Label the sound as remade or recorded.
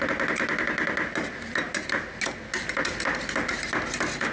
recorded